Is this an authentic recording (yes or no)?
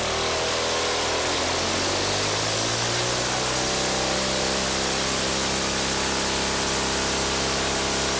yes